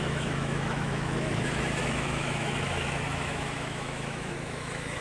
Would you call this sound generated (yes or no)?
yes